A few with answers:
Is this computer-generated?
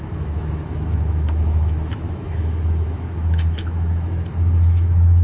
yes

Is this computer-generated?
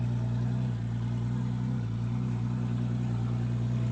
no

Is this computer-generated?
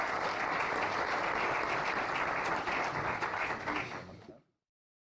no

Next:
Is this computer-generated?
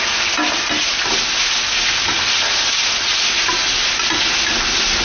no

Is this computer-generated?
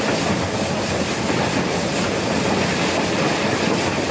no